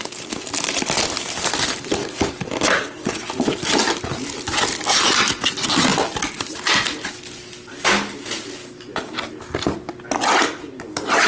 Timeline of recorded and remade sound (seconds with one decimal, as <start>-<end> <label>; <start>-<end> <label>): 0.0-11.3 recorded

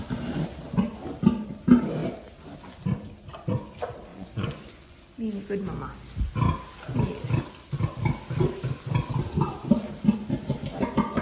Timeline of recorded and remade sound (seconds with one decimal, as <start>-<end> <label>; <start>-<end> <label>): 0.0-4.1 recorded; 4.1-5.0 remade; 5.0-11.2 recorded